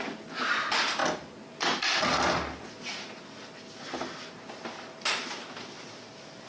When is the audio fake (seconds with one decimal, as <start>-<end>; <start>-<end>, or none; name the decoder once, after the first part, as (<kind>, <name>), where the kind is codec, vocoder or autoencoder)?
none